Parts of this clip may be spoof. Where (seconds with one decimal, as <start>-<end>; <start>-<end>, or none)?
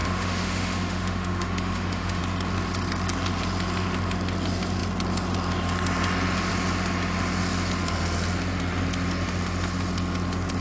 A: 0.0-2.2